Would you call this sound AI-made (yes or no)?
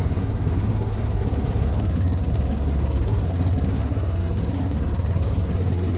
yes